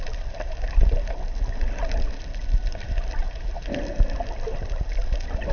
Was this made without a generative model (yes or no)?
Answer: yes